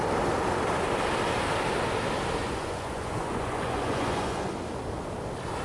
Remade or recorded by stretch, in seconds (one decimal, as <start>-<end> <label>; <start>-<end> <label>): 0.0-2.4 recorded; 2.4-4.5 remade; 4.5-5.6 recorded